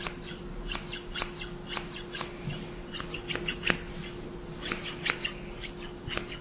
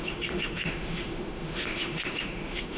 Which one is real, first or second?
first